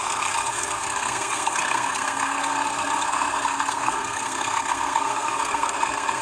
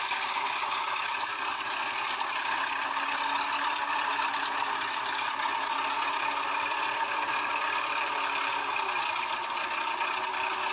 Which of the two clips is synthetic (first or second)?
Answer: first